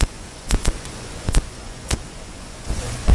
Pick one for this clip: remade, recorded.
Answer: remade